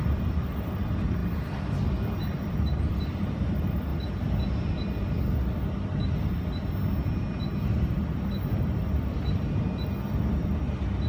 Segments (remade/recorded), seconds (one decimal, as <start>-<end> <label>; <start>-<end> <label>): 0.0-1.2 remade; 1.2-2.2 recorded; 2.2-3.9 remade; 3.9-7.9 recorded; 7.9-11.1 remade